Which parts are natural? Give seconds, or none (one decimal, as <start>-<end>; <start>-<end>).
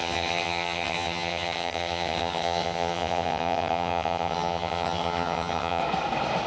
5.8-6.5